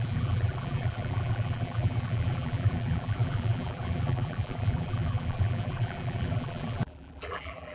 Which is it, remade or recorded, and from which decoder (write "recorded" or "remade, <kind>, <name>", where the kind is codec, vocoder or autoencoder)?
remade, vocoder, BigVGAN v2